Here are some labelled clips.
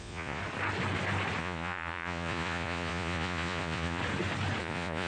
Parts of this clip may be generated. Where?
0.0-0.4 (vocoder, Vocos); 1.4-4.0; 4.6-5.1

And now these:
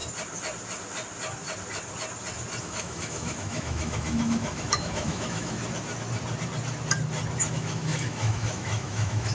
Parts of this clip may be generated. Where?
2.6-5.6 (autoencoder, DAC-VAE); 7.5-9.3

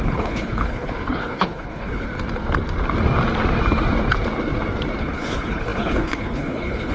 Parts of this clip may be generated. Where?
0.0-2.1 (codec, HILCodec); 5.0-6.9

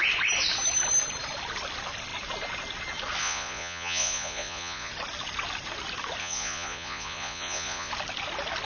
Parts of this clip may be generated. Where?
3.2-4.9 (vocoder, Vocos); 6.2-7.9

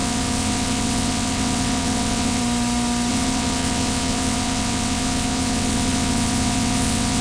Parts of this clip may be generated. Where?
0.0-2.4 (vocoder, WaveNeXt); 3.1-7.2

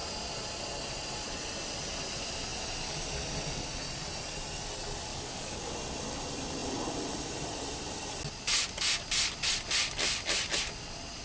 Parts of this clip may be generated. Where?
5.1-5.7 (codec, DAC)

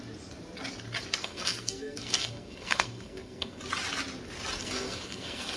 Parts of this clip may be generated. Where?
1.2-3.6 (codec, SNAC); 4.6-5.6

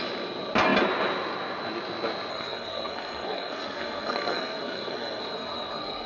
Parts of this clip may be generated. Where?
2.3-6.1 (codec, SNAC)